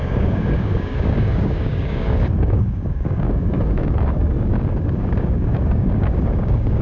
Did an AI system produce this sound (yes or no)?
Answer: yes